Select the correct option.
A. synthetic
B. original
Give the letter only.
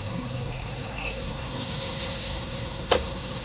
A